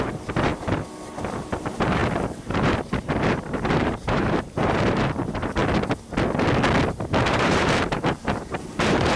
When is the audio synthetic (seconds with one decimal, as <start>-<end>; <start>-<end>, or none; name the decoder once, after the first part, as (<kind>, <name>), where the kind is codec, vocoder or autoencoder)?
0.0-0.5 (vocoder, BigVGAN v2); 1.6-5.6; 7.2-9.2